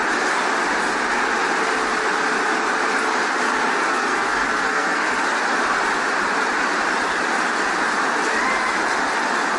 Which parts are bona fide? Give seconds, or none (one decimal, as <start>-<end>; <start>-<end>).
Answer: 0.0-3.9; 5.2-9.6